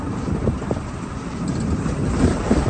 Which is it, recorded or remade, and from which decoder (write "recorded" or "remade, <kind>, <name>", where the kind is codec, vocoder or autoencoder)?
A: remade, vocoder, BigVGAN v2